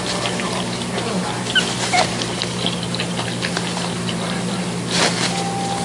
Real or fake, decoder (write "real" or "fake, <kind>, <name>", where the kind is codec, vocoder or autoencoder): fake, vocoder, BigVGAN v2